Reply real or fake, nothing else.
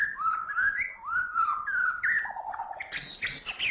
real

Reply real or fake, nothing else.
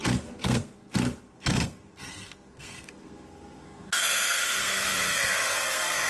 fake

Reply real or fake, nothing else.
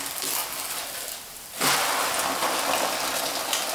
real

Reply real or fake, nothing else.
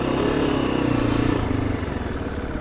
real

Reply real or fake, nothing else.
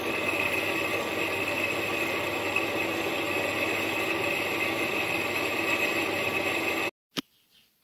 real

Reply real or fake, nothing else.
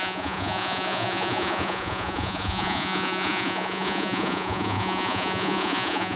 fake